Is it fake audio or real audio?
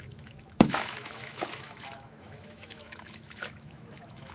fake